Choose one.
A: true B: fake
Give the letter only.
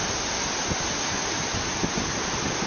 A